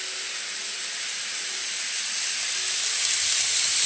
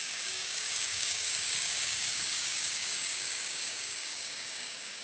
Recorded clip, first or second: first